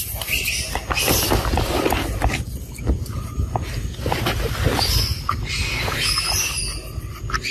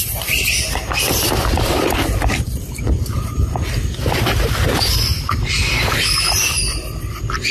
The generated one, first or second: second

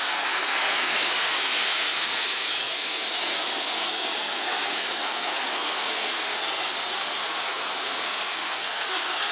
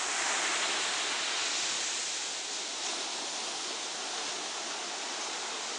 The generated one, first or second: first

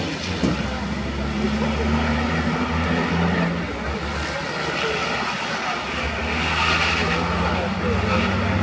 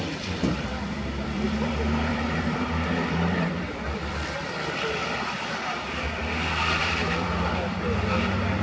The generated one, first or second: second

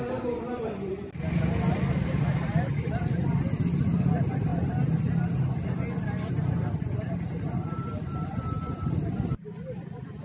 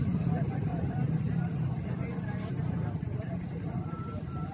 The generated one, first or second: second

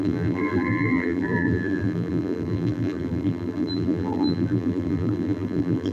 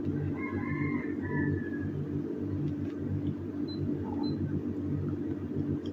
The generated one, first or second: first